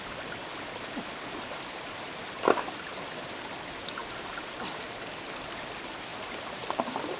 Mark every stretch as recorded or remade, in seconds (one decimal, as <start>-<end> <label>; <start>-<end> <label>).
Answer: 0.0-7.2 recorded

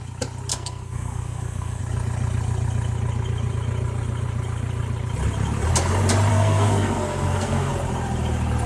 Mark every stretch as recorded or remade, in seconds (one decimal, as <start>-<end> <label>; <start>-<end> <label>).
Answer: 0.0-0.5 recorded; 0.5-1.8 remade; 1.8-6.3 recorded; 6.3-7.7 remade; 7.7-8.7 recorded

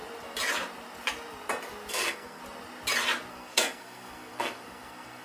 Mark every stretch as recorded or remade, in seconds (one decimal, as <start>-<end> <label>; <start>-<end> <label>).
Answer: 0.0-1.9 recorded; 1.9-2.4 remade; 2.4-3.3 recorded; 3.3-5.2 remade

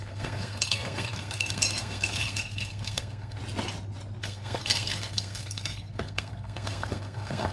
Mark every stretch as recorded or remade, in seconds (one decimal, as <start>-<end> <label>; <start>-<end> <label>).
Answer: 0.0-3.4 remade; 3.4-4.2 recorded; 4.2-7.5 remade

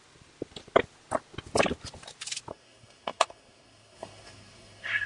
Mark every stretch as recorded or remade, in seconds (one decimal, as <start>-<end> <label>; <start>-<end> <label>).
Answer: 0.0-2.5 recorded; 2.5-5.1 remade

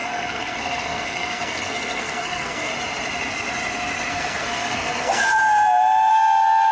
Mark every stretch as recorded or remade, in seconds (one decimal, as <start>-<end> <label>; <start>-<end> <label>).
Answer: 0.0-2.7 remade; 2.7-4.1 recorded; 4.1-5.4 remade; 5.4-6.1 recorded; 6.1-6.7 remade